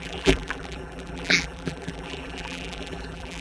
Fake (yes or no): yes